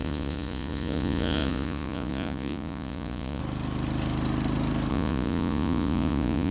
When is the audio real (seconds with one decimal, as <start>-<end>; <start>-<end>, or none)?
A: 3.4-4.9

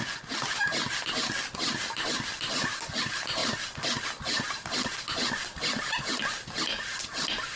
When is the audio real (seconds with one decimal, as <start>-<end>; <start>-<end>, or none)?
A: 0.0-7.6

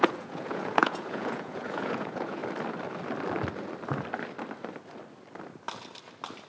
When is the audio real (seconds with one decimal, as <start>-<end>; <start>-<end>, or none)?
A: 2.4-6.5

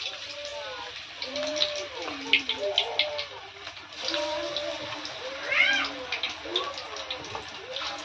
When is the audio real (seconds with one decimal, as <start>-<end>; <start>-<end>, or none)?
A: 0.0-8.0